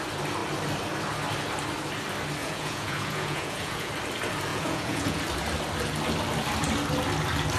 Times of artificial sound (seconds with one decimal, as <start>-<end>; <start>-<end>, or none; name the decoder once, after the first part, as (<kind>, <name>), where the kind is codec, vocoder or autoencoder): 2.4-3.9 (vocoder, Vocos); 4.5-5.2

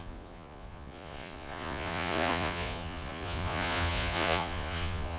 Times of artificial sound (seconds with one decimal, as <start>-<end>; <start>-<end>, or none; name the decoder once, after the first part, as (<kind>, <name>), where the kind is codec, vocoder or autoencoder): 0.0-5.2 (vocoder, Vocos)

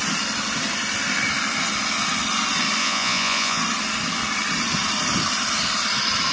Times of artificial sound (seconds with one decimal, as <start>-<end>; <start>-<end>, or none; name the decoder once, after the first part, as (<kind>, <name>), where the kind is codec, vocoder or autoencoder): 2.8-3.6 (vocoder, Vocos)

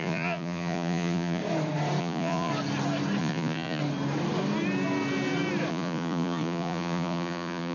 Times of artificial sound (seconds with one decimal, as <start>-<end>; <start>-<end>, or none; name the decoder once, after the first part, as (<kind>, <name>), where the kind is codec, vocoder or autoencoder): 0.0-1.4 (vocoder, Vocos); 2.0-2.5; 3.2-3.8; 5.7-7.7

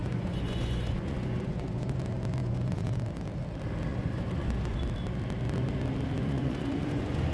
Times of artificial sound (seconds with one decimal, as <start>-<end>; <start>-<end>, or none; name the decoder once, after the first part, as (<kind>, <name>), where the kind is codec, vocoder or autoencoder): 0.0-2.0 (vocoder, Vocos); 2.4-3.0; 3.9-4.8; 6.2-7.3